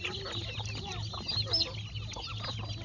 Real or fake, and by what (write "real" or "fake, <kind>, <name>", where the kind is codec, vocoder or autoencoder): real